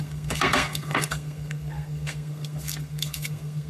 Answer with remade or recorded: remade